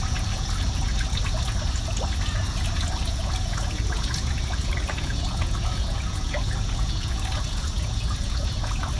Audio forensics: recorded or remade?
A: remade